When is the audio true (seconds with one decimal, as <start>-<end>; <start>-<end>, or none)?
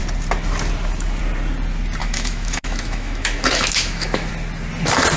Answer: 0.0-2.0; 4.3-5.2